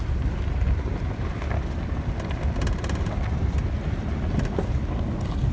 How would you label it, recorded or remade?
recorded